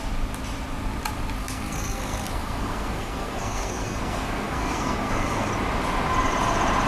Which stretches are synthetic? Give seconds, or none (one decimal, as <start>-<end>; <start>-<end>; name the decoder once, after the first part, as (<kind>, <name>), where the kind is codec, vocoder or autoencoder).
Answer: 1.4-5.5 (codec, SNAC)